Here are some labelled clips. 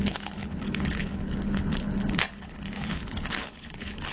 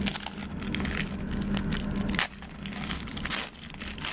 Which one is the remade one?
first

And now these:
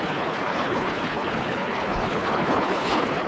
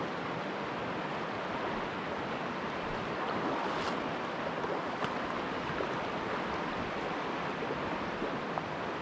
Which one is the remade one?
first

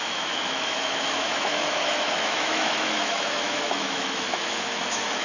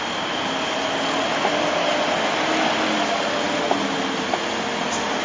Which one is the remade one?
first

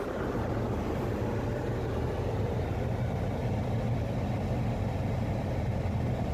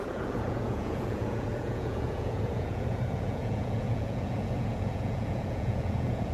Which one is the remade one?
second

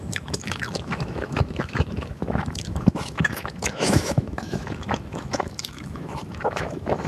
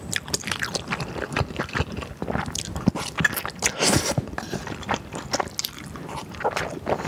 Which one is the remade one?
first